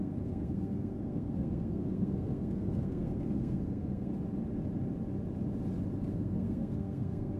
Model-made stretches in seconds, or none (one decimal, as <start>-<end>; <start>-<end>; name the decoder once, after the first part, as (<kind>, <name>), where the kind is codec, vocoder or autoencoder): 0.0-4.1 (codec, SNAC); 6.1-7.4